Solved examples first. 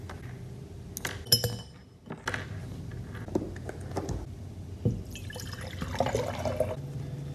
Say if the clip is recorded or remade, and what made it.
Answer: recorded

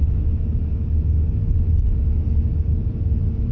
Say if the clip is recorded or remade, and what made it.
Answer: recorded